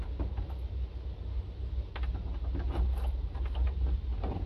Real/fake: real